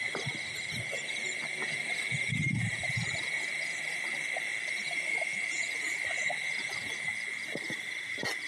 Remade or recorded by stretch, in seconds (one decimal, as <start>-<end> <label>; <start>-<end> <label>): 0.0-8.5 recorded